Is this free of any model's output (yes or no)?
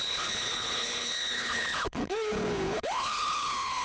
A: no